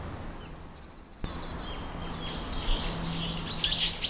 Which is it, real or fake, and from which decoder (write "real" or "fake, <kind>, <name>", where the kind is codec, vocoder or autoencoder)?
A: real